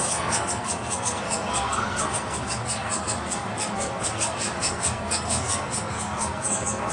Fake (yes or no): yes